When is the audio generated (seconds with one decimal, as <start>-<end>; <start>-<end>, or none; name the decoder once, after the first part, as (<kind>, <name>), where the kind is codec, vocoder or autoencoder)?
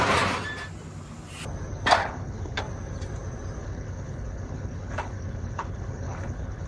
2.0-2.6 (codec, HILCodec); 3.6-6.7